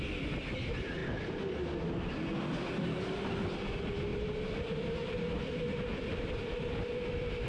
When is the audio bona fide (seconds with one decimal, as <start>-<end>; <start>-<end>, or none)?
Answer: 0.0-7.5